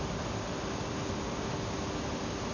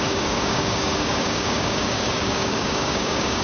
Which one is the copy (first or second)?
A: second